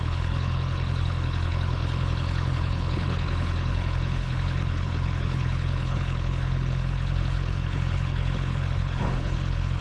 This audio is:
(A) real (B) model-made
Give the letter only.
B